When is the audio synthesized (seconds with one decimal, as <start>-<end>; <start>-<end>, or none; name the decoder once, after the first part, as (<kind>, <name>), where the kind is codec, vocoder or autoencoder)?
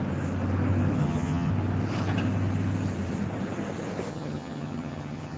1.0-1.5 (vocoder, HiFi-GAN); 4.1-5.4